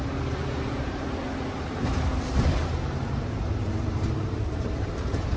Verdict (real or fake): fake